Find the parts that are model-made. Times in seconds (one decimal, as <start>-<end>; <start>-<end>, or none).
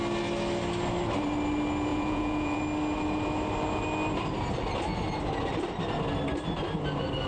1.9-2.6